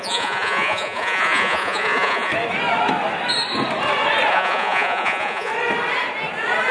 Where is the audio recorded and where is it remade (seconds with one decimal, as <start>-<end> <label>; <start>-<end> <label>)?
0.0-2.3 remade; 2.3-4.3 recorded; 4.3-5.5 remade; 5.5-6.7 recorded